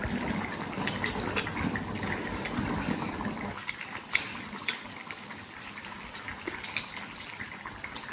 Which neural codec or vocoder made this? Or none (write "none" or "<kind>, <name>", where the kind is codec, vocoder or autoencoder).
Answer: none